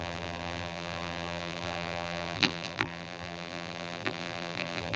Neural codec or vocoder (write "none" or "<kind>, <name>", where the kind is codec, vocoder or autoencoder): vocoder, BigVGAN v2